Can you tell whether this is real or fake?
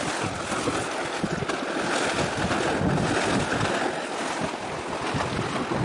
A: real